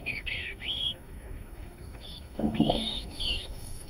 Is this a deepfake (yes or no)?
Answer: yes